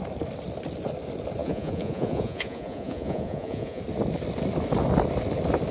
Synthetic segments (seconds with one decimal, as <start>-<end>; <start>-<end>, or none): 1.4-3.8